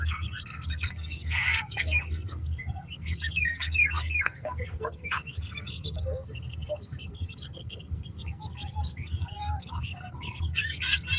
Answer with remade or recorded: remade